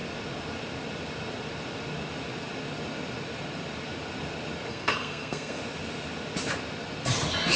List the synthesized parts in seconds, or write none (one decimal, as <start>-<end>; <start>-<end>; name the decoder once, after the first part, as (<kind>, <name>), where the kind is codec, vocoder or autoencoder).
4.7-5.6 (codec, SNAC)